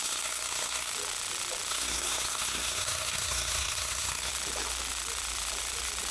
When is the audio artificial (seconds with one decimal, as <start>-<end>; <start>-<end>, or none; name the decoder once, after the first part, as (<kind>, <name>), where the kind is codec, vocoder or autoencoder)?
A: 0.0-0.9 (codec, SNAC); 1.7-4.3